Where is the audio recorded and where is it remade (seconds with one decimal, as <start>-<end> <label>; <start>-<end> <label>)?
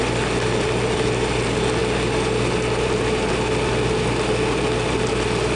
0.0-5.5 recorded